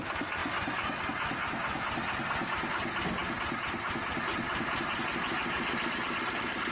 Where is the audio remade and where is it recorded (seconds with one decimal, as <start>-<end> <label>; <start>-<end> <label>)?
0.0-6.7 recorded